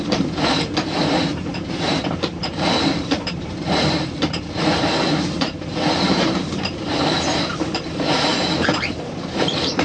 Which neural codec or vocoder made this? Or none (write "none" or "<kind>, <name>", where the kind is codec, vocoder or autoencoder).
vocoder, BigVGAN v2